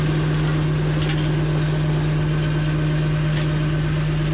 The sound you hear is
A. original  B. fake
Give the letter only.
A